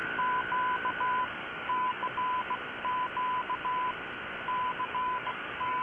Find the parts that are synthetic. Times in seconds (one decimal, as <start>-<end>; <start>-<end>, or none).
1.2-2.0; 4.8-5.8